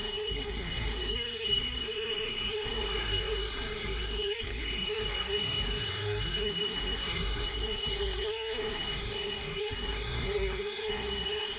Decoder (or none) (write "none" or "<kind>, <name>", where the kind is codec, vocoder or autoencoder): codec, SNAC